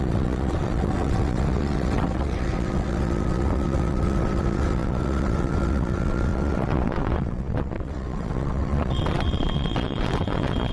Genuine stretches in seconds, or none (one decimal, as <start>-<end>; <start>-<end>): none